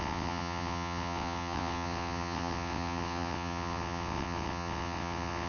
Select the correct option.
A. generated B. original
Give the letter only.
A